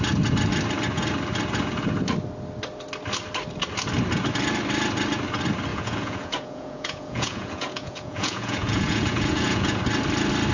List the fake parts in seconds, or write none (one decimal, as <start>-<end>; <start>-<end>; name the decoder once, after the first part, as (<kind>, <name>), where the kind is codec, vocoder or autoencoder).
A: 5.7-9.8 (vocoder, Vocos)